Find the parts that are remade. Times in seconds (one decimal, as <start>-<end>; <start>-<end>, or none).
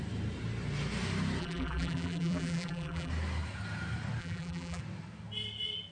1.4-3.1; 4.2-4.8